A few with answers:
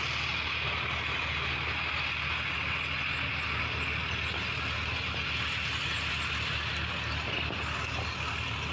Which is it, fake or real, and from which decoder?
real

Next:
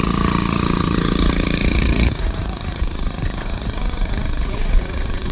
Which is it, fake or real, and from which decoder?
fake, vocoder, Vocos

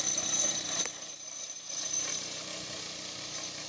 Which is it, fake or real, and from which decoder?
real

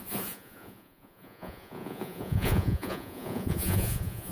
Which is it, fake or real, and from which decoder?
fake, vocoder, Vocos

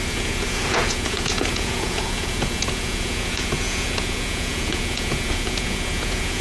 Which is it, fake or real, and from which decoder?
fake, vocoder, Vocos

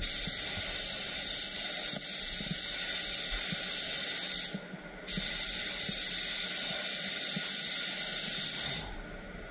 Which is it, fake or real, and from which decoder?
real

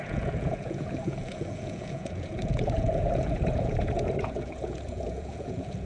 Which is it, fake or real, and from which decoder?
fake, vocoder, Vocos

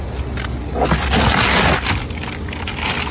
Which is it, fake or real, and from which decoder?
real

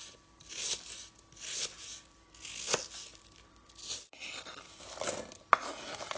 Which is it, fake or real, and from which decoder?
real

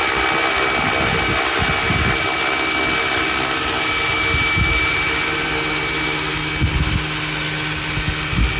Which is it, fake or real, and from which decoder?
real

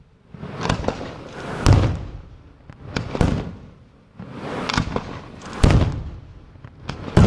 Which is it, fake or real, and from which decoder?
real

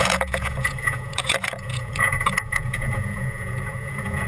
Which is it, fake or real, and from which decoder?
fake, vocoder, Vocos